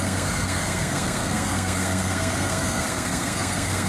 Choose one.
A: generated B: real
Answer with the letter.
A